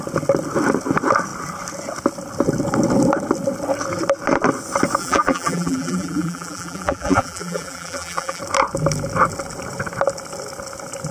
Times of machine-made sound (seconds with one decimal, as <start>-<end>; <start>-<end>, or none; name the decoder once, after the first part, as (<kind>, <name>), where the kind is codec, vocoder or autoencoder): 5.0-8.4 (vocoder, BigVGAN v2)